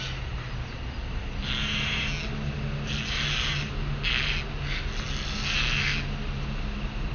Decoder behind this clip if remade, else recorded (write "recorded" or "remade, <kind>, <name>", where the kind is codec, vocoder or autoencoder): recorded